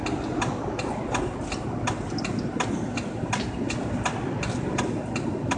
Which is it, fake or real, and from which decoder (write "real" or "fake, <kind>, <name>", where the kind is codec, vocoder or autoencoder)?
real